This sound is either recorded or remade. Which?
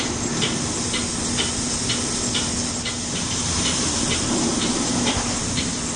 recorded